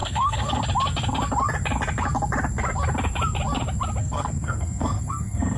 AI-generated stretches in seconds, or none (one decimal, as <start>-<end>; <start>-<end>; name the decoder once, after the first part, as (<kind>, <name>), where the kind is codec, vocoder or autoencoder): 0.0-0.6 (codec, SNAC); 4.0-5.6